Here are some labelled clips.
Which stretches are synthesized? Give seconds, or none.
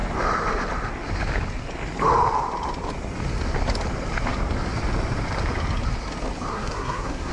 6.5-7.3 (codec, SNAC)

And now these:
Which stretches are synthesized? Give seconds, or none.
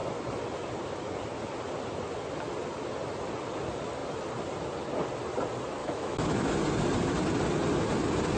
5.8-6.5 (autoencoder, DAC-VAE)